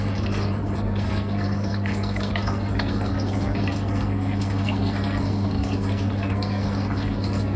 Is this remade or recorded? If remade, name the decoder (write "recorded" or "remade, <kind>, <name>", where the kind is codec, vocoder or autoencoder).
remade, codec, SNAC